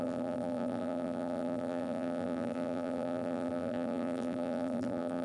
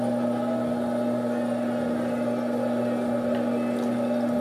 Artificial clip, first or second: first